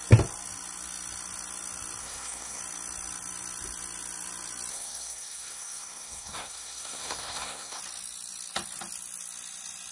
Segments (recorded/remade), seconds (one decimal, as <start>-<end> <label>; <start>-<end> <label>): 0.0-2.0 recorded; 2.0-2.6 remade; 2.6-4.7 recorded; 4.7-7.8 remade; 7.8-9.9 recorded